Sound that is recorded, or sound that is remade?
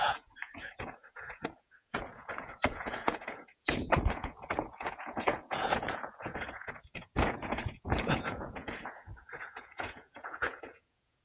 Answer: remade